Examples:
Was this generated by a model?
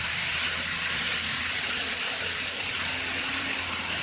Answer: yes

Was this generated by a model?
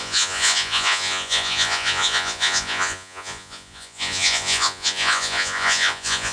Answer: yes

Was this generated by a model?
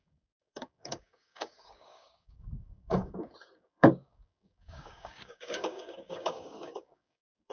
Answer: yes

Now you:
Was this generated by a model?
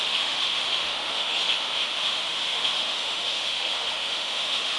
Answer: yes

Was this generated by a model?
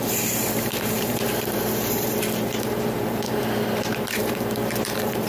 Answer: yes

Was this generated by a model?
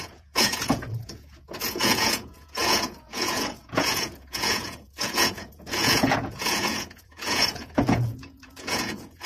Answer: yes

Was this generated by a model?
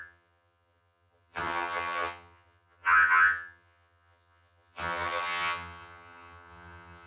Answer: yes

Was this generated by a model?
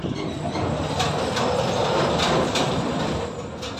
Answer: no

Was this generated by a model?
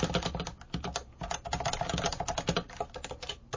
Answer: no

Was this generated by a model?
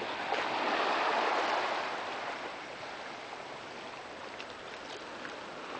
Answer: no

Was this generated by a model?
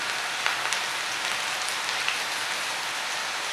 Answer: no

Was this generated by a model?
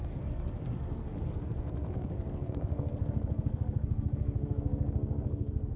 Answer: yes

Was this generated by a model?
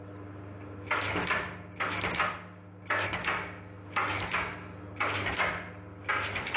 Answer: no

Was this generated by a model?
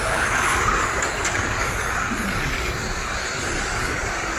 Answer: yes